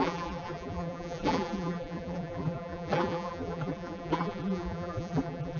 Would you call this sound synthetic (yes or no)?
yes